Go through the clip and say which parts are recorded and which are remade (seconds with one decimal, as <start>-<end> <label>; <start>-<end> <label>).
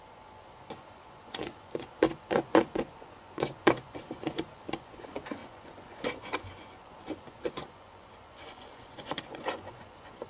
0.0-10.3 remade